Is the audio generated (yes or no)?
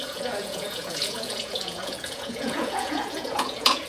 yes